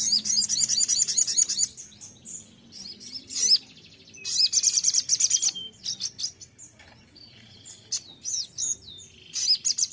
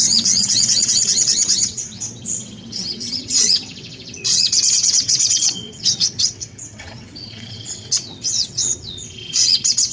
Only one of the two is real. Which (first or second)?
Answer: first